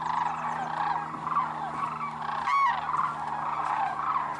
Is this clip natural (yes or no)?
yes